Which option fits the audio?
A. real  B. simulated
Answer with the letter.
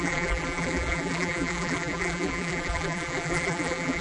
B